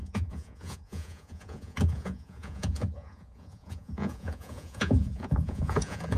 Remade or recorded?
remade